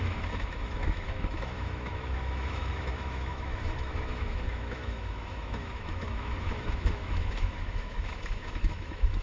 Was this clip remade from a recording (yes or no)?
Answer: yes